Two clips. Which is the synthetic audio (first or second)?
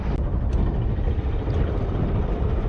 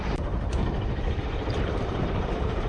second